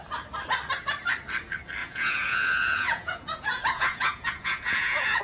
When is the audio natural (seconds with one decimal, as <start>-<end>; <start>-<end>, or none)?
0.0-1.8